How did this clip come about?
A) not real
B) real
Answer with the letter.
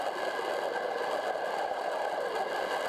B